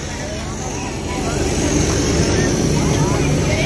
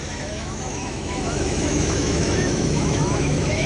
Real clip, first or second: first